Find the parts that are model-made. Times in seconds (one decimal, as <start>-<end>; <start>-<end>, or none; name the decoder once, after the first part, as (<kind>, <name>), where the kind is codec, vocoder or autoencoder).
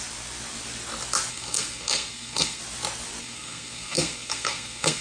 1.3-2.6 (codec, SNAC); 3.2-5.0